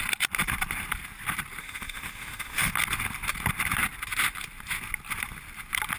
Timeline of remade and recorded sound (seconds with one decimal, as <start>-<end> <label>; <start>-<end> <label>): 0.0-1.6 recorded; 1.6-2.7 remade; 2.7-6.0 recorded